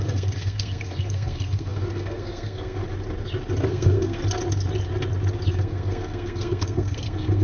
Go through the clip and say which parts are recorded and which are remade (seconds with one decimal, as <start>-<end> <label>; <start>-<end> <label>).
0.0-2.8 remade; 2.8-3.7 recorded; 3.7-4.2 remade; 4.2-5.5 recorded; 5.5-7.4 remade